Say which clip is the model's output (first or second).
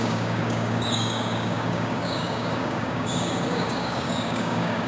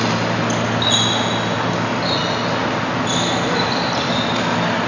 first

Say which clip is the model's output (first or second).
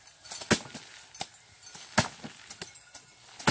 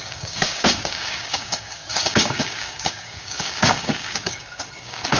second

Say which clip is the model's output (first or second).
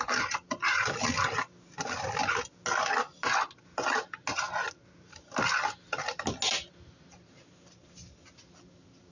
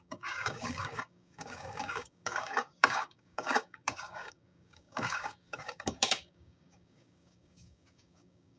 second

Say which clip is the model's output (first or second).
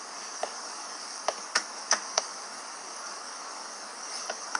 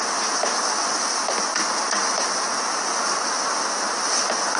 first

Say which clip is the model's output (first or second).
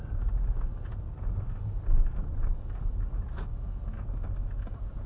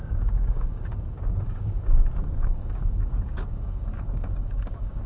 second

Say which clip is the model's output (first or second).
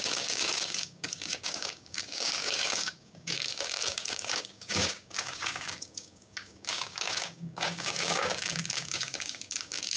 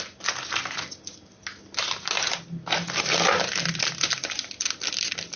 first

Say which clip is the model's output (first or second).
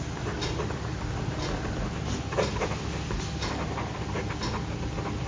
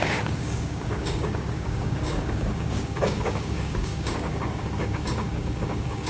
second